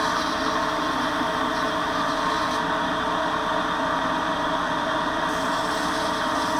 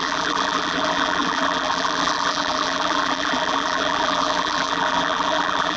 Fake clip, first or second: second